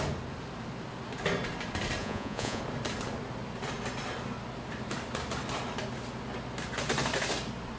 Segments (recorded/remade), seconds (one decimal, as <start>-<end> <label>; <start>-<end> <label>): 0.0-2.0 recorded; 2.0-2.6 remade; 2.6-7.8 recorded